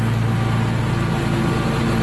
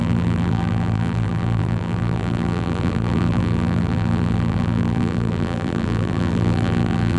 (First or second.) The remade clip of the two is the second